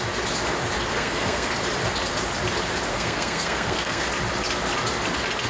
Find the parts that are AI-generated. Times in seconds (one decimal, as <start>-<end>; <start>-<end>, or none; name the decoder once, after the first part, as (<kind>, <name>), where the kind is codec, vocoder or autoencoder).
0.9-1.5 (codec, SNAC); 2.9-4.0